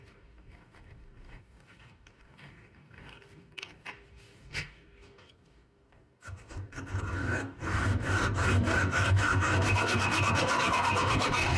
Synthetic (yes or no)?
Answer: yes